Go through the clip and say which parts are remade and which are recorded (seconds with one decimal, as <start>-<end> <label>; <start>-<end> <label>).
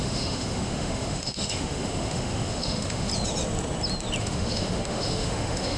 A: 0.0-3.1 remade; 3.1-4.2 recorded; 4.2-5.8 remade